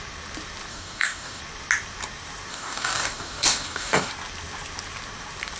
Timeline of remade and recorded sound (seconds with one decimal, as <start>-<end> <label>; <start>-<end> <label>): 0.0-0.7 recorded; 0.7-1.4 remade; 1.4-2.5 recorded; 2.5-4.1 remade; 4.1-5.6 recorded